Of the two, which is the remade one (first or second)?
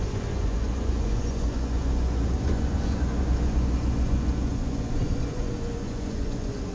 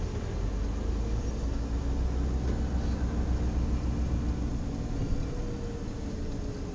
first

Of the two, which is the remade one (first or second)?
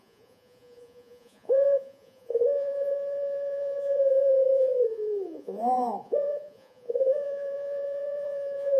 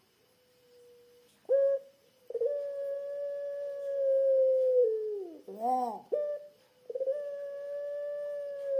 first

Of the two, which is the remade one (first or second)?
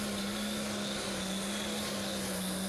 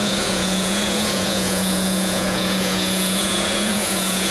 second